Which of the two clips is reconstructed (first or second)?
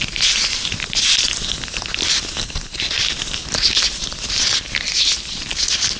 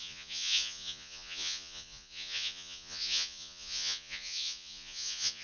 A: second